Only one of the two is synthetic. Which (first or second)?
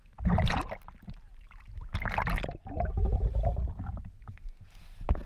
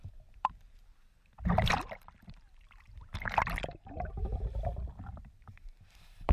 second